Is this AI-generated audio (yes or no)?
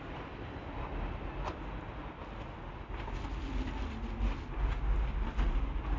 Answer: no